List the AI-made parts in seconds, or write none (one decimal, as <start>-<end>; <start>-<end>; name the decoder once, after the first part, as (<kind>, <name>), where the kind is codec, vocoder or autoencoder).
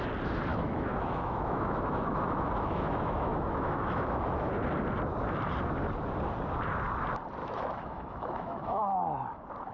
0.5-4.5 (autoencoder, DAC-VAE); 7.4-8.8